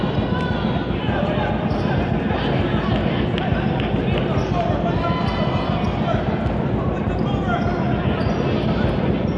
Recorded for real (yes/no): yes